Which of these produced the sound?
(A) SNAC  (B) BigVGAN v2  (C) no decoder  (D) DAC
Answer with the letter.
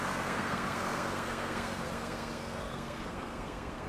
A